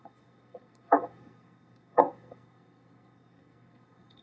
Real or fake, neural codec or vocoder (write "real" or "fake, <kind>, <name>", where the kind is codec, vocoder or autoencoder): fake, codec, SNAC